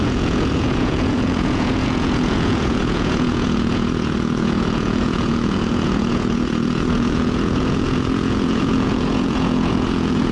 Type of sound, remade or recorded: remade